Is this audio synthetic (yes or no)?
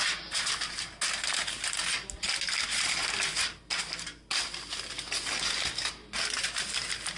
no